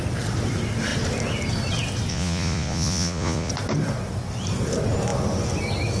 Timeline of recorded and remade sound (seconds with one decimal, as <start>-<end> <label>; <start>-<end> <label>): 0.0-2.1 recorded; 2.1-3.5 remade; 3.5-6.0 recorded